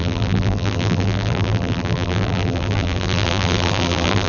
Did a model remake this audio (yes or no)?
yes